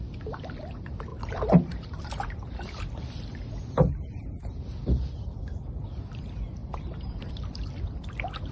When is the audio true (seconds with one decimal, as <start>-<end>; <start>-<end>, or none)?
0.0-1.1; 2.8-6.6; 7.3-8.5